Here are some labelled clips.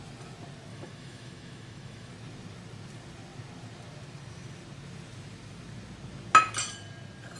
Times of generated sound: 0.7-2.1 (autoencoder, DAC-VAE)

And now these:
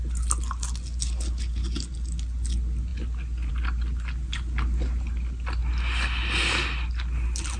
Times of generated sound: none

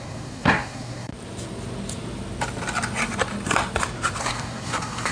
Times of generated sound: 0.0-1.1 (codec, SNAC); 4.2-5.1